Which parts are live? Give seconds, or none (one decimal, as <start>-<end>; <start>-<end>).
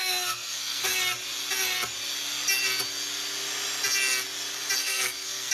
0.9-4.8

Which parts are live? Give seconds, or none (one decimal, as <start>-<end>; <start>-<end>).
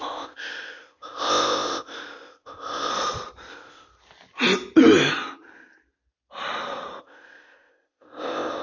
2.9-3.5; 3.9-7.0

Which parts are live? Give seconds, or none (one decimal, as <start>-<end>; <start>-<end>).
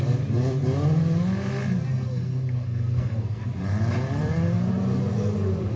0.0-1.9; 3.4-5.8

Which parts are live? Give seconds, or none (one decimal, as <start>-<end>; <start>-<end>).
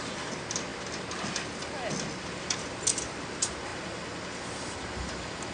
0.0-5.5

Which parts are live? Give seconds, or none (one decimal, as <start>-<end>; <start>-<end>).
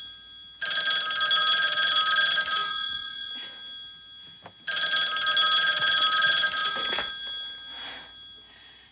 0.0-2.6; 3.3-6.6; 7.1-8.9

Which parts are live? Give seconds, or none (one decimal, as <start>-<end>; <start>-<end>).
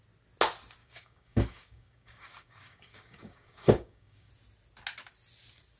0.0-0.8; 4.3-5.8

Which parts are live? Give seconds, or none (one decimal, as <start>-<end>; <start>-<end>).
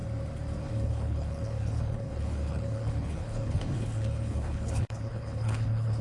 0.0-0.6